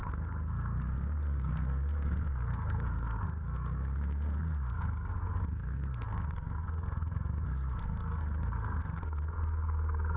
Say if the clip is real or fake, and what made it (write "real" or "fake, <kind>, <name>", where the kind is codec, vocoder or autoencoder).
fake, codec, SNAC